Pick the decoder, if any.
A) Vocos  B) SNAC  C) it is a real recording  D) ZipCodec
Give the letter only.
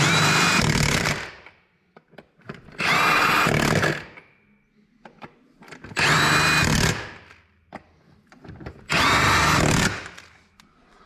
C